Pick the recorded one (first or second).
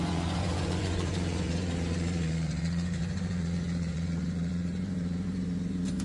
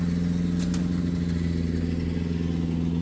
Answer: second